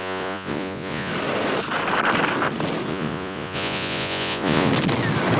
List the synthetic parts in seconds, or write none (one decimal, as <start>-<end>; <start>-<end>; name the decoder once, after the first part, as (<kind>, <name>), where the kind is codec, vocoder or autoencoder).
0.0-1.1 (vocoder, Vocos); 2.9-4.7